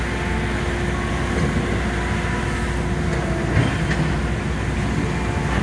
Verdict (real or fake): real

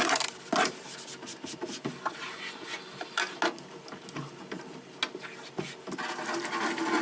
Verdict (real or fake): real